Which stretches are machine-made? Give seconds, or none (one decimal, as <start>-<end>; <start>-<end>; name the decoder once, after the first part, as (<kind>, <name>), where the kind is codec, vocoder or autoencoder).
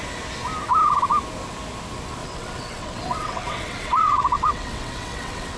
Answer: 2.2-5.6 (vocoder, WaveNeXt)